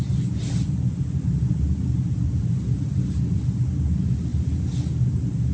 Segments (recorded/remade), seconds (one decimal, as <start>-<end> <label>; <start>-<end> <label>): 0.0-5.5 recorded